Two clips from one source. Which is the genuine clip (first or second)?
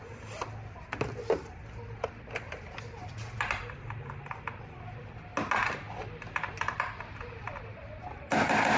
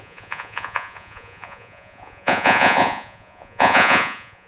first